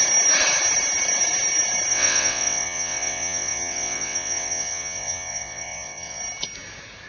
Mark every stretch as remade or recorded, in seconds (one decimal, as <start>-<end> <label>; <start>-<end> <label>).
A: 0.0-1.9 recorded; 1.9-6.2 remade; 6.2-7.1 recorded